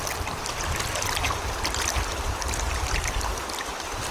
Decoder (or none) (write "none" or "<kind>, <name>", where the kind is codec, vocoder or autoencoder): none